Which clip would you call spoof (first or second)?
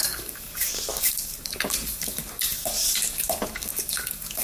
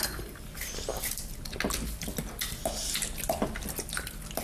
first